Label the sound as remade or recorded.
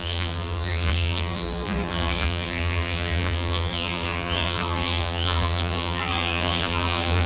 remade